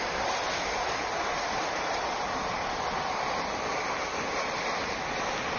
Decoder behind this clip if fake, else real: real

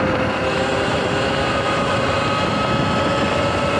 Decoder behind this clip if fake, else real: real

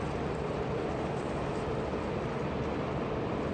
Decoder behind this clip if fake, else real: fake, vocoder, BigVGAN v2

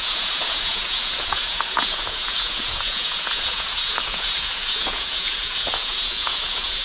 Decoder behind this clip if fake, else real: fake, vocoder, Vocos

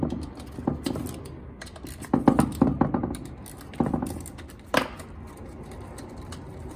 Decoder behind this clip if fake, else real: real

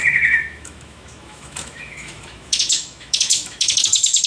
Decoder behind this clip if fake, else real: fake, autoencoder, DAC-VAE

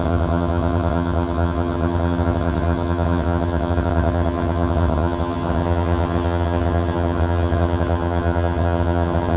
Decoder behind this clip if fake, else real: fake, vocoder, HiFi-GAN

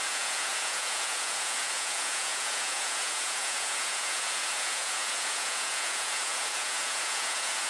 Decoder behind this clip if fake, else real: fake, vocoder, Vocos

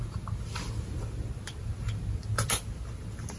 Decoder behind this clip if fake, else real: real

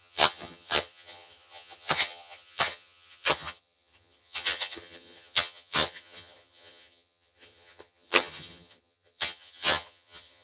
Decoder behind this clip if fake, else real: fake, vocoder, HiFi-GAN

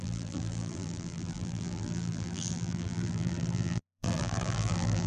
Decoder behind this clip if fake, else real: fake, vocoder, BigVGAN v2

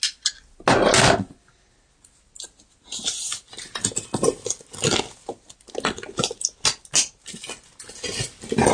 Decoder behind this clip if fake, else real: real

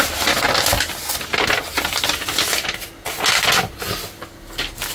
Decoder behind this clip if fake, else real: real